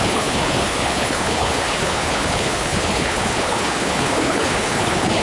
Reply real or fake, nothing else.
fake